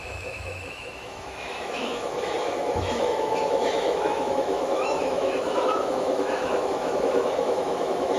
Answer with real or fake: fake